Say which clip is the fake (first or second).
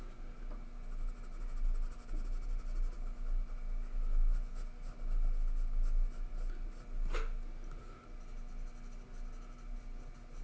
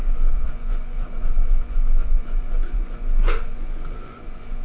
second